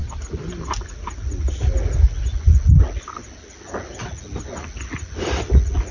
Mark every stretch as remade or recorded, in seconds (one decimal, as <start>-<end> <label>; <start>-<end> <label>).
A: 0.0-5.9 recorded